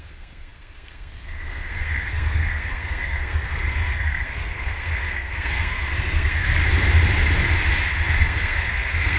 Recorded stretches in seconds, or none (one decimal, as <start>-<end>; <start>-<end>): 6.6-8.2